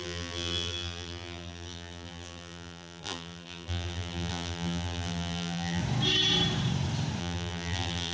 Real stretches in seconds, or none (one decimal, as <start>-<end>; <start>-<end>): 5.8-7.2